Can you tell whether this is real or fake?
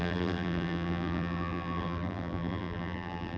fake